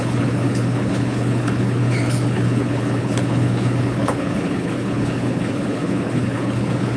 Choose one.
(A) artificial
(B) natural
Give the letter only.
A